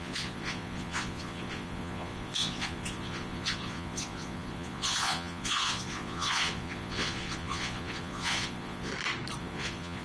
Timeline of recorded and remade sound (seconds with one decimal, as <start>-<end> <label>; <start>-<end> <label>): 0.0-8.9 remade; 8.9-9.4 recorded; 9.4-10.0 remade